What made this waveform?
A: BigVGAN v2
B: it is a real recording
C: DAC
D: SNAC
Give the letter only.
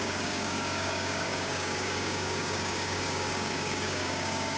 C